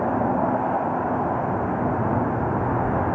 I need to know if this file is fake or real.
real